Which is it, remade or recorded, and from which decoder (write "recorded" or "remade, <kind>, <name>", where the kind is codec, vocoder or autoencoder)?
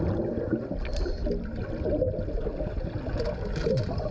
recorded